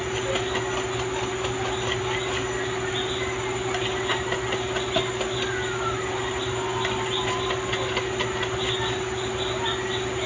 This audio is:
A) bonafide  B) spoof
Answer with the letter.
A